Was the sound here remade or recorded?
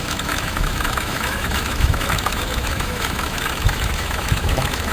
remade